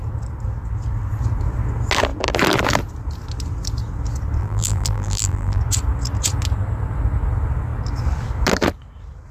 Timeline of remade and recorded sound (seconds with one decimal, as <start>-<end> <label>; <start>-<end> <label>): 0.0-4.4 recorded; 4.4-5.6 remade; 5.6-9.3 recorded